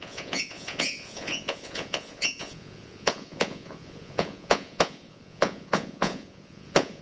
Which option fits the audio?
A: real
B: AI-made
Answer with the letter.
B